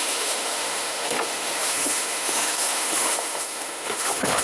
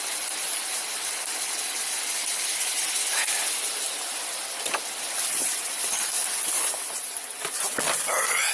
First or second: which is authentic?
second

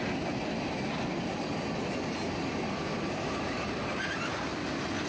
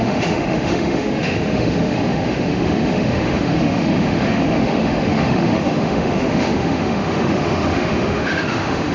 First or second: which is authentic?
first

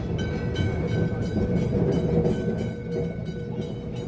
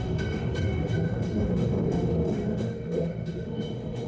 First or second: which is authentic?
first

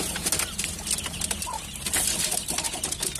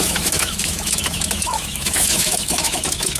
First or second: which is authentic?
first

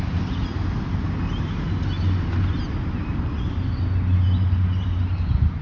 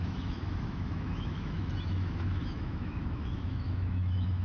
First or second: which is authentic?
first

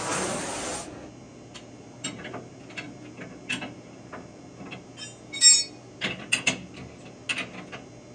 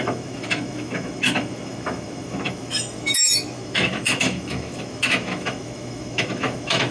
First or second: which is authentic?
first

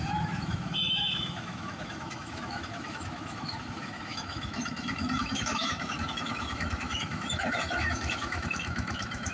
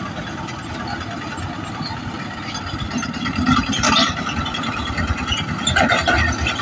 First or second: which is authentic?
second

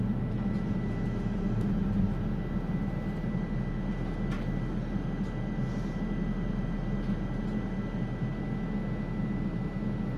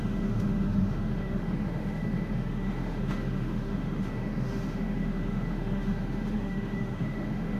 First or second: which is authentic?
first